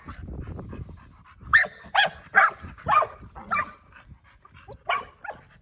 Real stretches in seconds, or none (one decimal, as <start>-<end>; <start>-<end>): 1.5-4.9